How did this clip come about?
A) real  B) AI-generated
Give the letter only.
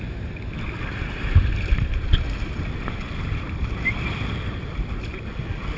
B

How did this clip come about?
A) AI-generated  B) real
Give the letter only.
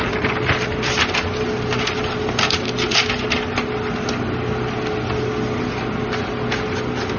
B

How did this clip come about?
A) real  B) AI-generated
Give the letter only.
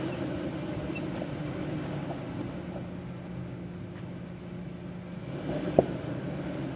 A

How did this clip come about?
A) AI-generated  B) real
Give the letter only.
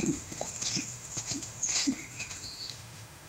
A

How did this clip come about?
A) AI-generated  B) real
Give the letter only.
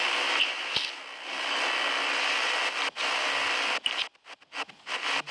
B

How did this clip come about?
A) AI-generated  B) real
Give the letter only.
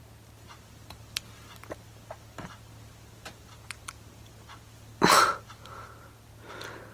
B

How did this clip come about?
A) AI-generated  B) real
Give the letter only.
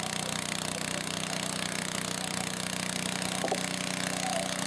B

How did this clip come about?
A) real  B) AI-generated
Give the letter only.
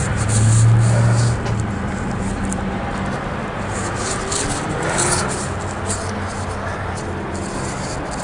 A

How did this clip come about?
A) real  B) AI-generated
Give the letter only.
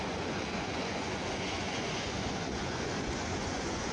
B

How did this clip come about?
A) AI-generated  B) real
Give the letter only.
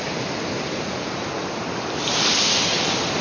B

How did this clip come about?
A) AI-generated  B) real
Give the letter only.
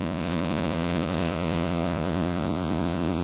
A